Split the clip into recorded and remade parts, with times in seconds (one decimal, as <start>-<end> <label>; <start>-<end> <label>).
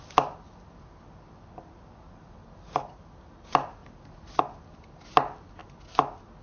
0.0-6.4 recorded